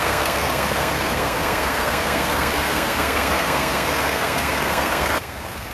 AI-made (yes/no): yes